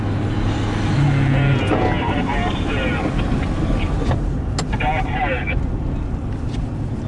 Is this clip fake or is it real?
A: real